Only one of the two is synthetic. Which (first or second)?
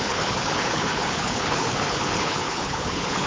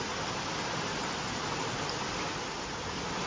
first